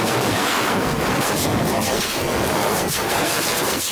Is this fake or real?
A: fake